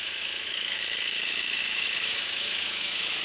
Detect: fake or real fake